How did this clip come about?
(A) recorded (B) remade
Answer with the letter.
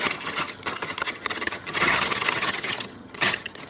B